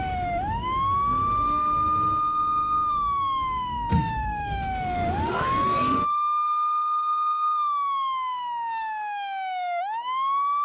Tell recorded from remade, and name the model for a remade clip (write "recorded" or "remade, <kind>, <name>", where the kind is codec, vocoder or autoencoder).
remade, autoencoder, DAC-VAE